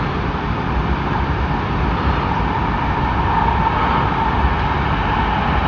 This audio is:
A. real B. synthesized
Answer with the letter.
A